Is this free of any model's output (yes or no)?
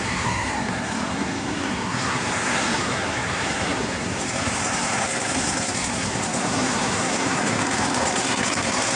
no